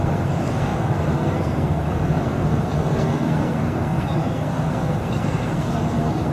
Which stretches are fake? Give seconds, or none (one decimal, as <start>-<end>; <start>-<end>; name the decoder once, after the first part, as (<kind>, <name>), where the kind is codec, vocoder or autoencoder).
0.0-6.3 (codec, SNAC)